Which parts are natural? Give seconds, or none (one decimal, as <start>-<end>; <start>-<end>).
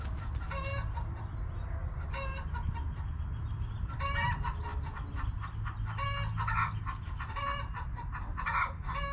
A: 0.0-9.1